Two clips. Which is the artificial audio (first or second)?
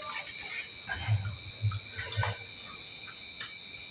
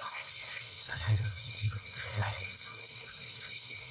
second